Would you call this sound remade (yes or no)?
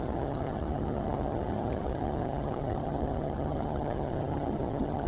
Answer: yes